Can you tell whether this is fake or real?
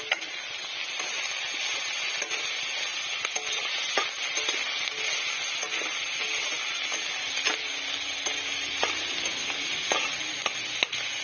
real